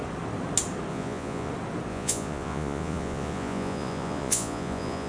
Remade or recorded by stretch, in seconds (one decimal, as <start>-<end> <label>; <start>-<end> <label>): 0.0-0.9 recorded; 0.9-1.5 remade; 1.5-1.9 recorded; 1.9-5.1 remade

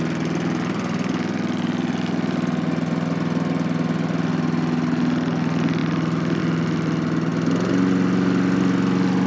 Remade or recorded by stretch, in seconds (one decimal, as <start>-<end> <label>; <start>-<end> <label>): 0.0-9.3 recorded